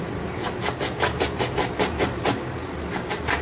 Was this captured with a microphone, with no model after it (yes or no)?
yes